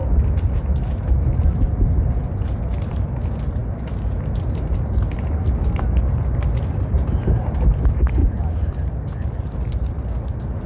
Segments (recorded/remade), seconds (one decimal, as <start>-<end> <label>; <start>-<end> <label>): 0.0-8.2 recorded; 8.2-8.8 remade; 8.8-10.7 recorded